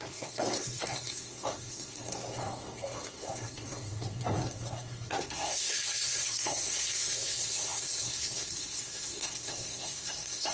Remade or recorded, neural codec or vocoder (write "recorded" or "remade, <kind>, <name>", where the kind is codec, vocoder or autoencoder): remade, codec, SNAC